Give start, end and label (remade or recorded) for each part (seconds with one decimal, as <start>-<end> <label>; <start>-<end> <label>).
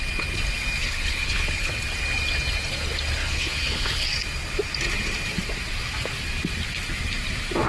0.0-0.8 recorded; 0.8-1.7 remade; 1.7-3.2 recorded; 3.2-4.0 remade; 4.0-7.7 recorded